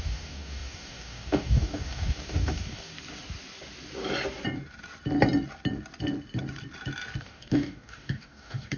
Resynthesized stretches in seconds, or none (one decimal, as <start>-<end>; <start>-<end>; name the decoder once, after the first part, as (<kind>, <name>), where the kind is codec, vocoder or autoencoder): 0.0-2.9 (codec, DAC); 7.2-8.8